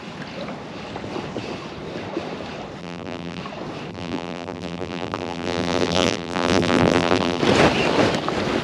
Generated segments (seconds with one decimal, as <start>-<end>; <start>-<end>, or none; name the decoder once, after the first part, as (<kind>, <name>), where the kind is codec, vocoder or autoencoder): 2.8-3.4 (vocoder, BigVGAN v2); 3.9-7.4

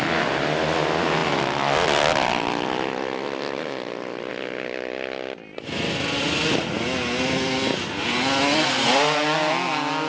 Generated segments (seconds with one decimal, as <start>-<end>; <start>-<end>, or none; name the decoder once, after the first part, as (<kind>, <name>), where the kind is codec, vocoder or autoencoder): none

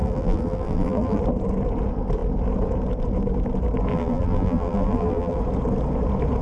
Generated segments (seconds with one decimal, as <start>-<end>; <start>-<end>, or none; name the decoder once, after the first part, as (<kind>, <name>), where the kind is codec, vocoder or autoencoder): 0.0-1.2 (vocoder, BigVGAN v2); 3.9-5.4

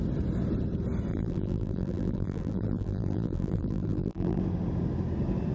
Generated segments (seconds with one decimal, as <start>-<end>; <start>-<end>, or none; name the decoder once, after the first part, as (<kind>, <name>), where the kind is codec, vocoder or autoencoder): 1.1-4.4 (vocoder, BigVGAN v2)

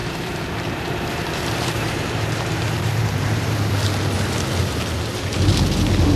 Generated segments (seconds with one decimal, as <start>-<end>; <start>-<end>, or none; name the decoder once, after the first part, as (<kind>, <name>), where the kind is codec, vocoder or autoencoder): 0.0-3.7 (vocoder, BigVGAN v2)

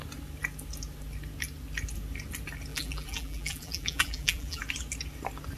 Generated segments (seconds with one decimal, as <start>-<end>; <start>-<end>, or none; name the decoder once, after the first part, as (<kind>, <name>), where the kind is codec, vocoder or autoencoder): 2.7-4.6 (vocoder, BigVGAN v2)

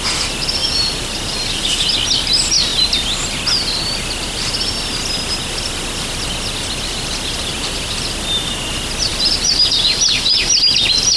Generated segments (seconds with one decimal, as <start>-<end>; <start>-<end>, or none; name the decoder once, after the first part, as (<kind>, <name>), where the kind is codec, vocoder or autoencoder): 0.6-1.9 (vocoder, BigVGAN v2); 9.1-10.6